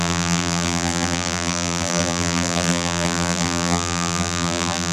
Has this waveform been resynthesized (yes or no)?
yes